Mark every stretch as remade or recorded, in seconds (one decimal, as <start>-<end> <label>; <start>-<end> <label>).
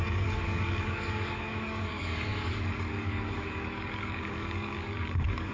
0.0-5.5 remade